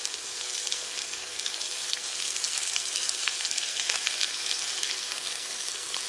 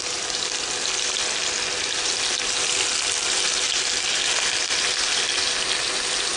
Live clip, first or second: second